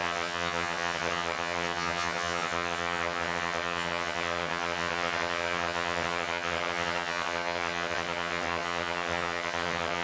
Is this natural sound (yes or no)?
no